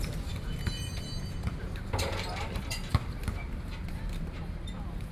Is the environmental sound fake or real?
fake